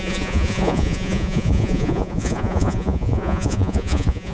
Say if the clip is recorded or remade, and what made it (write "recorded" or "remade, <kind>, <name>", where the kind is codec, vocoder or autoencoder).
remade, vocoder, Vocos